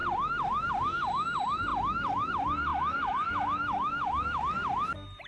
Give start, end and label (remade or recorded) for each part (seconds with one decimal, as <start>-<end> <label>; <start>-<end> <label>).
0.0-2.7 recorded; 2.7-4.4 remade; 4.4-5.3 recorded